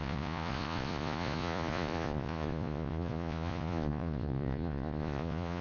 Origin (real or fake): fake